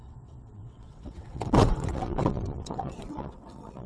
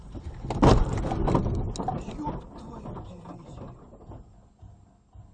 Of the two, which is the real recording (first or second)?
second